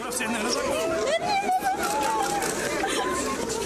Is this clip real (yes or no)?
yes